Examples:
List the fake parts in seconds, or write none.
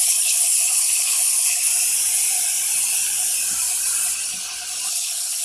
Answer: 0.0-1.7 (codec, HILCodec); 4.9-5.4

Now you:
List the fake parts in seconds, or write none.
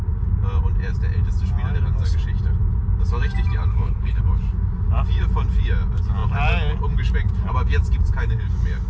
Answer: 3.7-4.2 (codec, HILCodec)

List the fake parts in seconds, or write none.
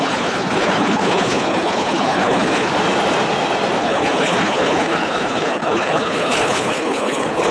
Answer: 0.0-2.7 (codec, HILCodec); 3.8-7.5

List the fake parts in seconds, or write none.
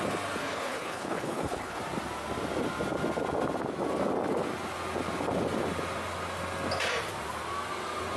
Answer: 0.4-1.8 (codec, HILCodec)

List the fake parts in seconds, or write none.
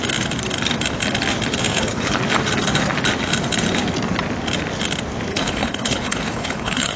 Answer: 1.7-2.2 (codec, HILCodec); 5.3-7.0